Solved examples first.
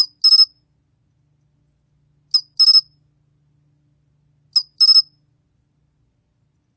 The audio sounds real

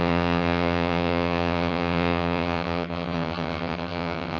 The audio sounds fake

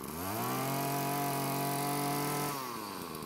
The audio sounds real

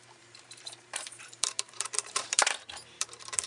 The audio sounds fake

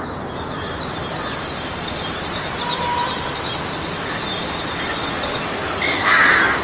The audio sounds real